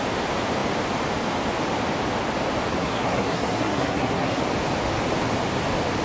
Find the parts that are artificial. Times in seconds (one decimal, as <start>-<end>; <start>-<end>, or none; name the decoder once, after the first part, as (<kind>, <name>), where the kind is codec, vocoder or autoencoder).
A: 2.8-4.4 (codec, SNAC)